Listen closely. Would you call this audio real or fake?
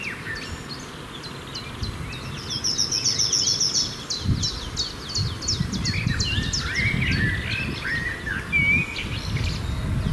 real